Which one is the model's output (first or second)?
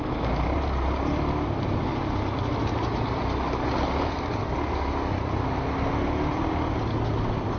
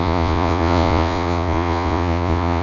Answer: second